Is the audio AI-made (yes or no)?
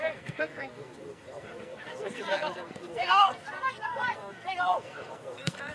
yes